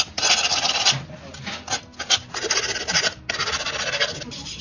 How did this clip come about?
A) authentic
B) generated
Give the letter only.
A